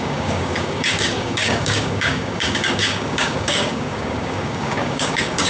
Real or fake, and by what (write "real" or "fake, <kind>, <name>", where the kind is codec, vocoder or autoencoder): fake, codec, DAC